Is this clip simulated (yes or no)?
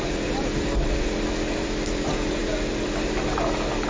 yes